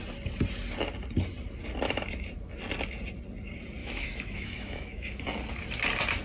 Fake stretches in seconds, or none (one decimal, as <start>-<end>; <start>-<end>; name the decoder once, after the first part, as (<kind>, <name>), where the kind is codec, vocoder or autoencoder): 3.8-5.2 (autoencoder, DAC-VAE)